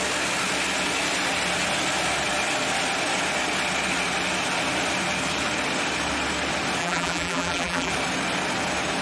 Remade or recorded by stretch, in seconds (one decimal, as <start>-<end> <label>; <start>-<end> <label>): 0.0-6.8 recorded; 6.8-7.9 remade; 7.9-9.0 recorded